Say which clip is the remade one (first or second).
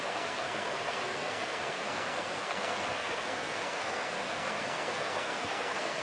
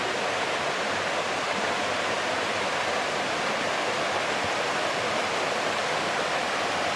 first